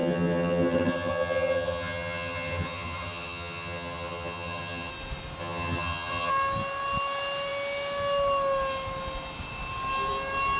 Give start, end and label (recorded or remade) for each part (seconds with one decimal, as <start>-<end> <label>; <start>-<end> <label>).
0.0-4.9 remade; 4.9-5.4 recorded; 5.4-6.3 remade; 6.3-10.6 recorded